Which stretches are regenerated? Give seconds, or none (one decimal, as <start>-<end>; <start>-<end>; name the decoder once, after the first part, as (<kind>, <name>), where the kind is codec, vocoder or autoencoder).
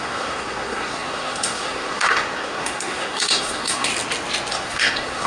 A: 0.0-3.9 (codec, SNAC); 4.5-5.3